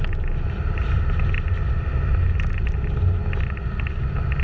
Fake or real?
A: real